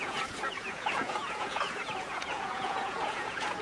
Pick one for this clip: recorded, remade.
remade